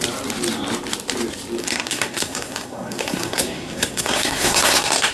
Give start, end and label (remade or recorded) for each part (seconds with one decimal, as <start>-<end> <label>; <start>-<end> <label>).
0.0-1.6 recorded; 1.6-5.1 remade